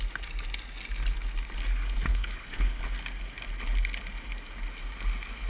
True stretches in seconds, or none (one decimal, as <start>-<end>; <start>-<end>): 0.0-2.1; 2.8-5.5